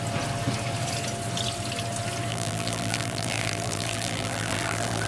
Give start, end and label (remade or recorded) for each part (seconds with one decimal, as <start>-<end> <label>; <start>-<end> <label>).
0.0-2.3 recorded; 2.3-5.1 remade